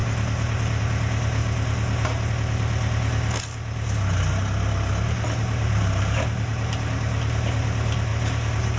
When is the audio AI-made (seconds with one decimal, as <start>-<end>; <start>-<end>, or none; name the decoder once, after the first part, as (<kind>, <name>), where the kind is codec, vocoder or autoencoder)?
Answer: 8.1-8.8 (vocoder, BigVGAN v2)